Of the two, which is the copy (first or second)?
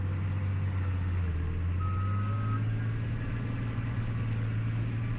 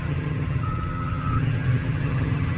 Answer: second